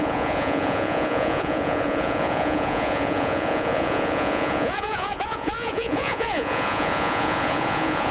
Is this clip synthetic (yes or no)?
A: yes